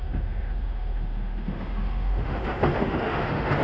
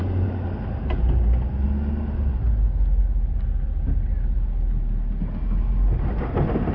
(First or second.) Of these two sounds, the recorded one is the second